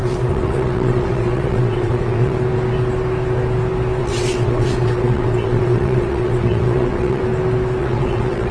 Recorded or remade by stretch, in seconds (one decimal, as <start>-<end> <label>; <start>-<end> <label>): 0.0-2.4 remade; 2.4-4.0 recorded; 4.0-7.2 remade; 7.2-7.8 recorded; 7.8-8.5 remade